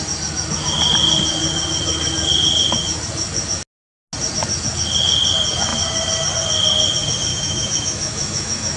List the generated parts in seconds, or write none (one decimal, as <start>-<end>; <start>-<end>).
7.3-8.8